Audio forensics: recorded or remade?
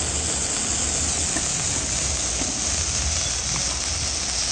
recorded